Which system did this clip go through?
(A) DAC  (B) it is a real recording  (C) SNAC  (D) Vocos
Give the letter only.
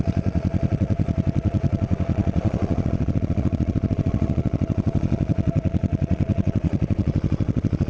D